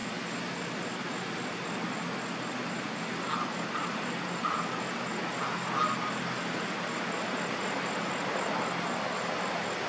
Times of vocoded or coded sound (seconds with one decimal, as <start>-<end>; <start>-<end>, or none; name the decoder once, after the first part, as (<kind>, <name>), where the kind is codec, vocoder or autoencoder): none